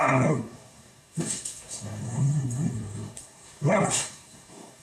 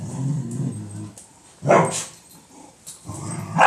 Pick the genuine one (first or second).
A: second